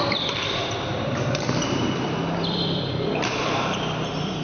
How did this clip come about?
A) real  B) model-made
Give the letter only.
B